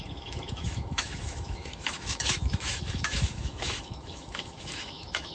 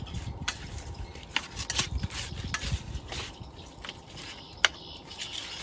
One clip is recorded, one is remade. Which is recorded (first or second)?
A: second